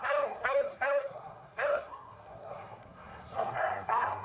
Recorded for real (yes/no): no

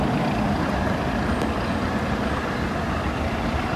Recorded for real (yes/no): yes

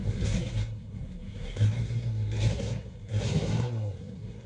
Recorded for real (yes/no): no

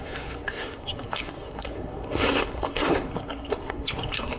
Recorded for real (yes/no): no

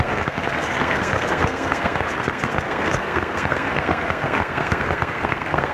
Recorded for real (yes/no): no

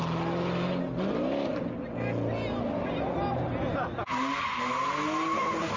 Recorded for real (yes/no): yes